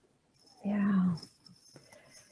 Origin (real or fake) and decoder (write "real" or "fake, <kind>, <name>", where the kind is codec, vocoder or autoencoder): real